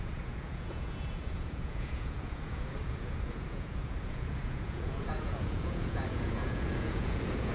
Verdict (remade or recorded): remade